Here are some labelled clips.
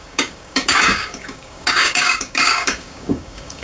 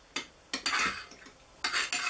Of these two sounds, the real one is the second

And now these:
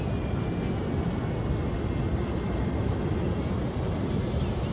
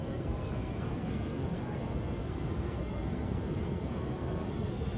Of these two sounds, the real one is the first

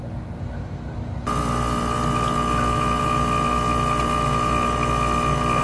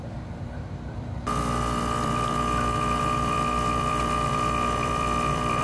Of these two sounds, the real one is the first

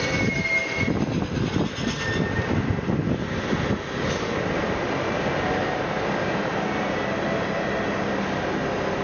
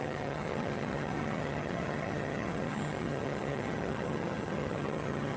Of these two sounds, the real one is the first